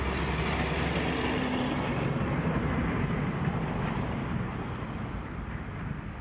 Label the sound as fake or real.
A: real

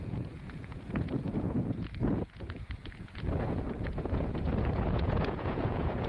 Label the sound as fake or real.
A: fake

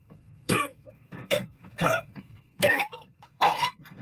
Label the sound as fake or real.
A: fake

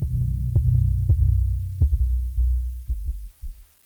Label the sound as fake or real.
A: real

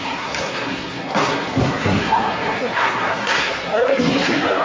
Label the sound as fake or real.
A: fake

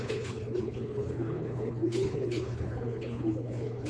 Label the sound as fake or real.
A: fake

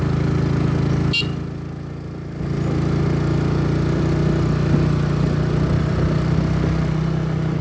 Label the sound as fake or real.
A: real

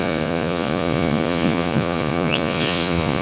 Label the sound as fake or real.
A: fake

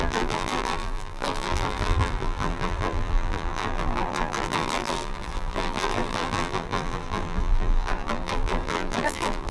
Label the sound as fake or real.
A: fake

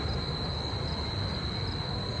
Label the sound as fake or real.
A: real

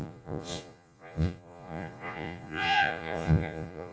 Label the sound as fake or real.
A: fake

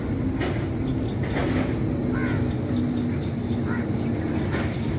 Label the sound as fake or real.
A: real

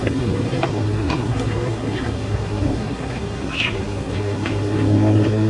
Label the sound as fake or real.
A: fake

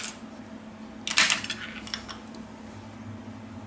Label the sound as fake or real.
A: real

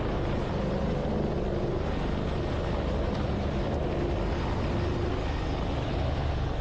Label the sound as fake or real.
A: real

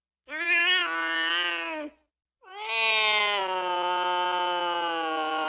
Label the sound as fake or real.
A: real